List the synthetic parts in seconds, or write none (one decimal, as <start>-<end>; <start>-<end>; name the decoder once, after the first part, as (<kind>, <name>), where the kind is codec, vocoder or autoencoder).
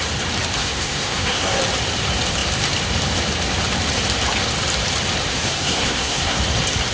0.6-1.6 (codec, SNAC); 5.3-6.4